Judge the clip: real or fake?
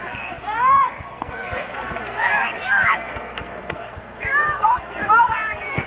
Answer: fake